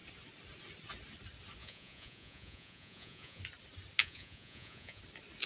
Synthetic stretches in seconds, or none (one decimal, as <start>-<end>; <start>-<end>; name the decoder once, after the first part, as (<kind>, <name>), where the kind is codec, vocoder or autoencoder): 1.6-3.4 (vocoder, Vocos); 4.0-5.0